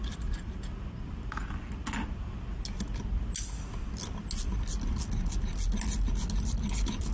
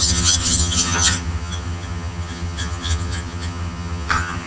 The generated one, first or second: second